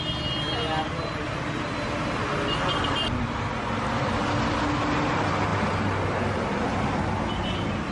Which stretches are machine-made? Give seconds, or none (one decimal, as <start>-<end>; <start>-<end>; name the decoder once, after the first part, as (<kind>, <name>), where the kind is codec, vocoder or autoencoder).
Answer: none